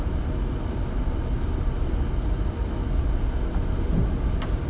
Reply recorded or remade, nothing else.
recorded